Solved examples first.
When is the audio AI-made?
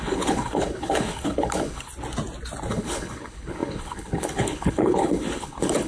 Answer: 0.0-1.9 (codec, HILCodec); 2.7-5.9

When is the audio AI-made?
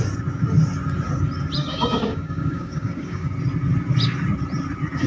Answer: 1.6-3.3 (codec, DAC)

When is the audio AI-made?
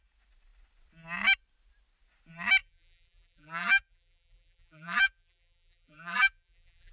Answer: 2.6-6.9 (vocoder, BigVGAN v2)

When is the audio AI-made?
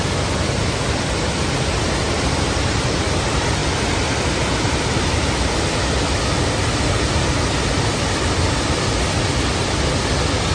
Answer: none